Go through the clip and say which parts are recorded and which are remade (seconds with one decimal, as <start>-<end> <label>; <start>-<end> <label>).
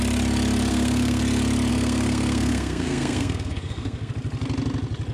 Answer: 0.0-0.7 recorded; 0.7-1.2 remade; 1.2-1.7 recorded; 1.7-4.1 remade; 4.1-5.1 recorded